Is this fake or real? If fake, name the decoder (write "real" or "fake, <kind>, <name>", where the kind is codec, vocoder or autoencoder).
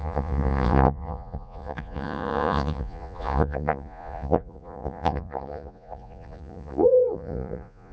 fake, vocoder, Vocos